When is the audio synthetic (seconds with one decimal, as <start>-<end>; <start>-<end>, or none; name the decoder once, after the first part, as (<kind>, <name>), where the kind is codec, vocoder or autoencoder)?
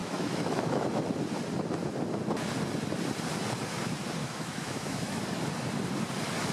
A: 0.0-1.0 (autoencoder, DAC-VAE); 4.2-5.2